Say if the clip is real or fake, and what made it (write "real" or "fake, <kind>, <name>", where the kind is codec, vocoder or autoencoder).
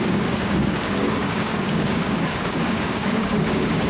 fake, codec, DAC